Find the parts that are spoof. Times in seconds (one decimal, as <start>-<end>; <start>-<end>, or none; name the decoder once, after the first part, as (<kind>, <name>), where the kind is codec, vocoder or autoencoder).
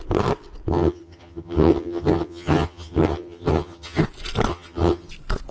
0.7-4.0 (vocoder, HiFi-GAN); 4.5-5.1